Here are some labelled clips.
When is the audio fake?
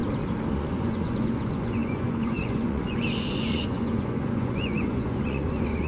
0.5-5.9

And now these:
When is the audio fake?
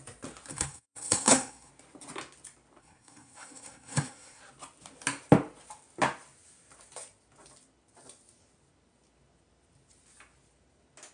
0.5-1.7; 2.8-4.4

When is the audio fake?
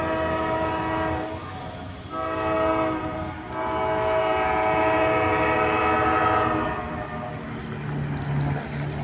1.4-2.1